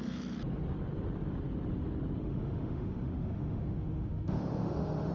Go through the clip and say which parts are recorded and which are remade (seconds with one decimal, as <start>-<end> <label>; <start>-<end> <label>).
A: 0.0-2.2 recorded; 2.2-5.1 remade